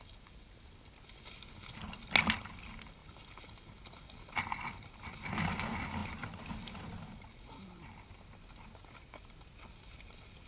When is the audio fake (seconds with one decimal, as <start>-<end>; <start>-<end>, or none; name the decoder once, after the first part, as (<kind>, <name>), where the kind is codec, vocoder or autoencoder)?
none